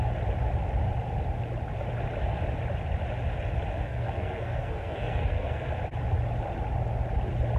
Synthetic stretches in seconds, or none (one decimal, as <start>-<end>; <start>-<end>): 3.7-5.7